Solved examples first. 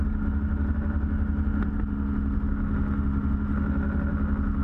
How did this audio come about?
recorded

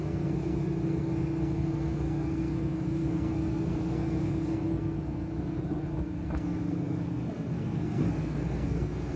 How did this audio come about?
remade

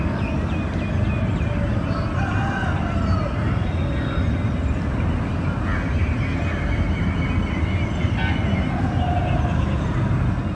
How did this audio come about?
recorded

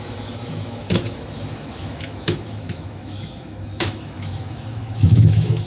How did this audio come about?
remade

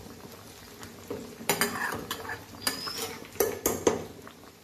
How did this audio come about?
recorded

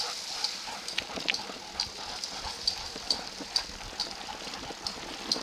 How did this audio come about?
recorded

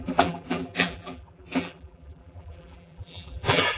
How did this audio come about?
remade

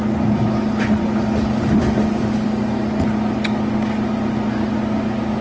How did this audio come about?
recorded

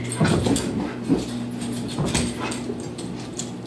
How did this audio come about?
recorded